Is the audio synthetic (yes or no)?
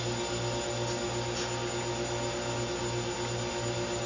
no